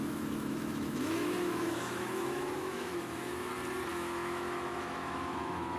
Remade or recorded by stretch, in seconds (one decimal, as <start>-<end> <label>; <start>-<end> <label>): 0.0-3.5 remade; 3.5-3.9 recorded; 3.9-5.8 remade

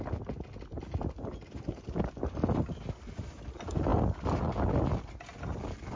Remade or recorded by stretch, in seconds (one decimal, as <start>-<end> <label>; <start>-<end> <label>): 0.0-6.0 recorded

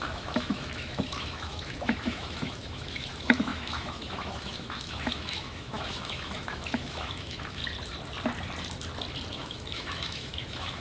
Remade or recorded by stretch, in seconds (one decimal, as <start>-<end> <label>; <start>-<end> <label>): 0.0-7.6 remade; 7.6-9.3 recorded; 9.3-10.8 remade

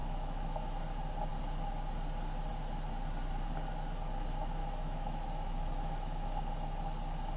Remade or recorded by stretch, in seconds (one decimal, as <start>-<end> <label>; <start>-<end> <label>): 0.0-0.8 remade; 0.8-4.6 recorded; 4.6-6.5 remade; 6.5-7.4 recorded

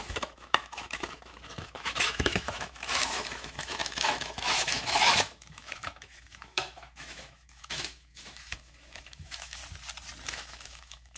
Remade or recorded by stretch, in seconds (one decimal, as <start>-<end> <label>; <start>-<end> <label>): 0.0-9.6 remade; 9.6-10.3 recorded; 10.3-11.2 remade

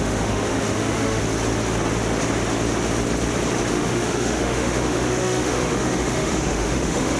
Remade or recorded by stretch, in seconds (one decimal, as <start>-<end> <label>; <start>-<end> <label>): 0.0-1.2 remade; 1.2-3.7 recorded; 3.7-7.2 remade